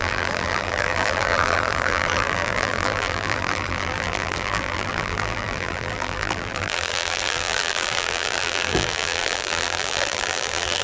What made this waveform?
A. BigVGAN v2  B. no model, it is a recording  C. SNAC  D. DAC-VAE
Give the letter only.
A